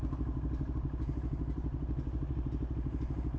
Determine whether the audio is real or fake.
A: real